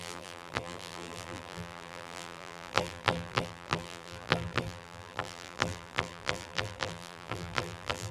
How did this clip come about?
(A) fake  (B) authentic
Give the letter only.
A